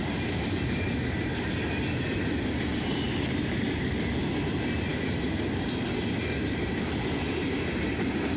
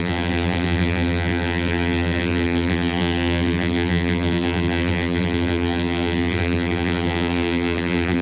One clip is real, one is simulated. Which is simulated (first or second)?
second